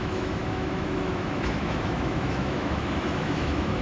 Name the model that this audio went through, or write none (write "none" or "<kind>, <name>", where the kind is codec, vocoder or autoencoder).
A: autoencoder, DAC-VAE